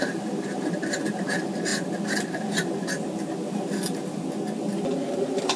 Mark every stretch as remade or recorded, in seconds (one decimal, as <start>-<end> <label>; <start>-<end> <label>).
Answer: 0.0-1.7 remade; 1.7-5.1 recorded; 5.1-5.6 remade